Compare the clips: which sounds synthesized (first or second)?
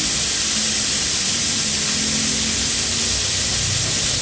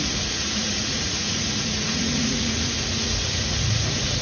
second